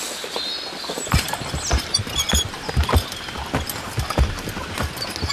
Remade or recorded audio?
recorded